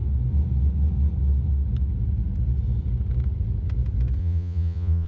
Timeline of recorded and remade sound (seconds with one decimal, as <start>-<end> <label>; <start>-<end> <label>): 0.0-4.2 recorded; 4.2-5.1 remade